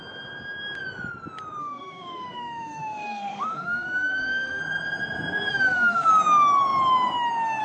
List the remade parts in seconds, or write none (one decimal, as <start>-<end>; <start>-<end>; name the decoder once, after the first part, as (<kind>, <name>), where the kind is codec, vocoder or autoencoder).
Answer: 1.6-4.6 (autoencoder, DAC-VAE); 5.5-6.1

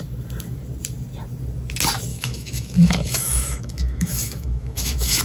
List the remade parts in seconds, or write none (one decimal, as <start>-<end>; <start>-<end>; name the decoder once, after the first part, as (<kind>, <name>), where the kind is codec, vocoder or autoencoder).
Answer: 2.1-5.2 (autoencoder, DAC-VAE)

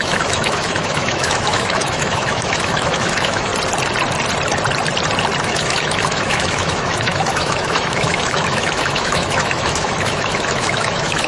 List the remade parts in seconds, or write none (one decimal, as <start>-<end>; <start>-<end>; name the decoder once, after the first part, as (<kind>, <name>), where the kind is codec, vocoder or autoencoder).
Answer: 0.0-3.5 (autoencoder, DAC-VAE); 5.4-11.3

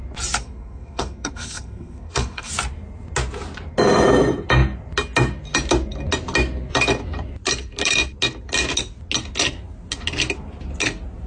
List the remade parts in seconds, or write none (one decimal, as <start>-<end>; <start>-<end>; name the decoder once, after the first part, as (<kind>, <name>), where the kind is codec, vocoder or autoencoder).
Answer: 0.4-2.5 (codec, SNAC)